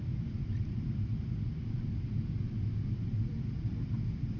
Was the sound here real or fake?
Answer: real